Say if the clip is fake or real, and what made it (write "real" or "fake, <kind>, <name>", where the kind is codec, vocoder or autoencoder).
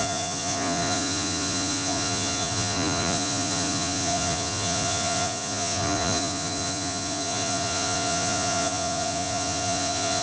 fake, vocoder, Vocos